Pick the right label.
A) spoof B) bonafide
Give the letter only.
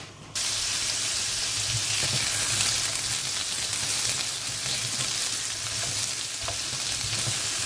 B